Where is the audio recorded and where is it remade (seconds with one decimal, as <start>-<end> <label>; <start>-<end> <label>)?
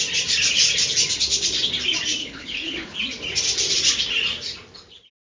0.0-2.2 recorded; 2.2-3.0 remade; 3.0-5.2 recorded